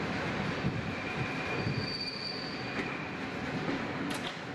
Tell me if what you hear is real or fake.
real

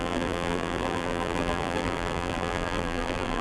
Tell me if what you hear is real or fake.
fake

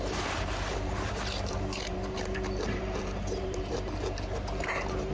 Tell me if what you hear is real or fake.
fake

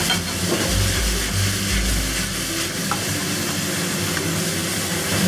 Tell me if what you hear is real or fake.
real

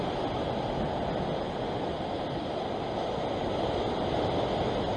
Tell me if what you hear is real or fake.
real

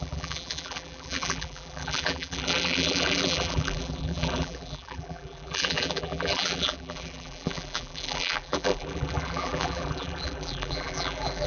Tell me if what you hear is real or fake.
fake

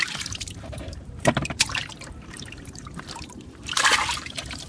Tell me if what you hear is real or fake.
fake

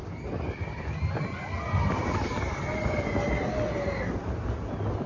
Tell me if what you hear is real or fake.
real